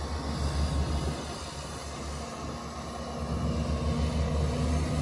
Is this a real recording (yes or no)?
yes